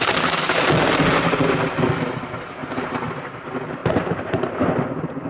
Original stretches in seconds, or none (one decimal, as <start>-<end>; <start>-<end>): 0.0-2.6; 3.4-3.8; 4.5-5.3